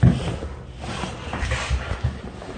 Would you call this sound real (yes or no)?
yes